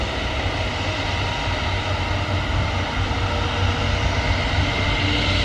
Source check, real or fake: real